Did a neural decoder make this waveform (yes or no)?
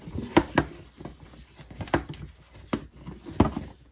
no